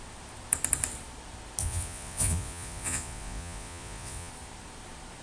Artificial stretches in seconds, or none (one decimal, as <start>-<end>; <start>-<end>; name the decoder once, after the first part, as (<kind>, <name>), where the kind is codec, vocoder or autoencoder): 1.6-4.3 (vocoder, Vocos)